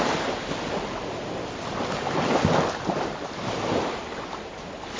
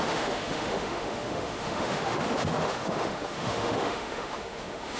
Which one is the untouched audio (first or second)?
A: first